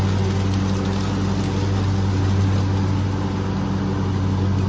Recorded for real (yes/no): yes